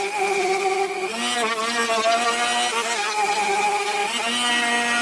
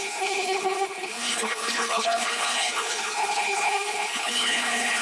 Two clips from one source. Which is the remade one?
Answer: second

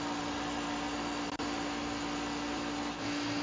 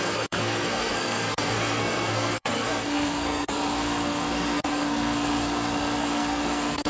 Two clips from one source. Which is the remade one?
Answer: second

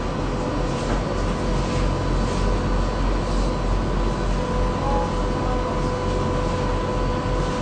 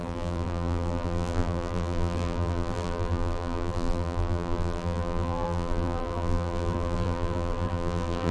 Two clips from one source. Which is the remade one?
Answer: second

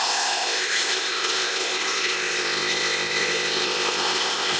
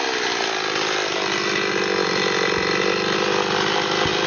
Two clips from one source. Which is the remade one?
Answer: first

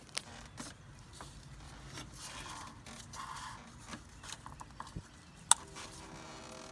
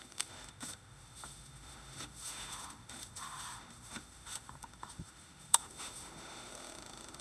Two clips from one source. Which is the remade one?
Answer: second